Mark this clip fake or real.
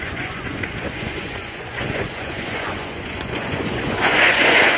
fake